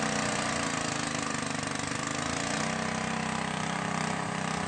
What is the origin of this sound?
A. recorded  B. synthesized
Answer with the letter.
A